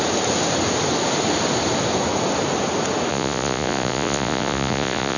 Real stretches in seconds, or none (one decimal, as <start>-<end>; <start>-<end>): 0.0-3.1